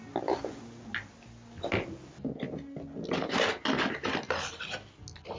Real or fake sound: real